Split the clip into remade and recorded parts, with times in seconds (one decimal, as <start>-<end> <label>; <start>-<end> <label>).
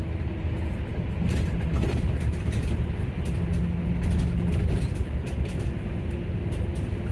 0.0-0.9 recorded; 0.9-2.9 remade; 2.9-4.6 recorded; 4.6-5.2 remade; 5.2-7.1 recorded